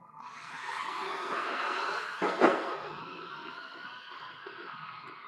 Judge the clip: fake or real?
fake